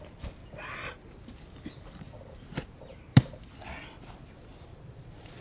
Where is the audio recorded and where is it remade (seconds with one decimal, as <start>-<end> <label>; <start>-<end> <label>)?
0.0-4.7 recorded; 4.7-5.4 remade